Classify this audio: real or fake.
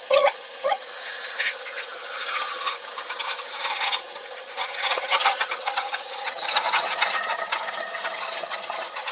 fake